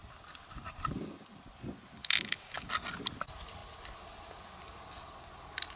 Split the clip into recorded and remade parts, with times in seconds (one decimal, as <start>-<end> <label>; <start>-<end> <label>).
0.0-2.0 recorded; 2.0-2.7 remade; 2.7-5.8 recorded